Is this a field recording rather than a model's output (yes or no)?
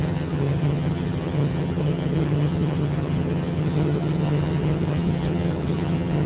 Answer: no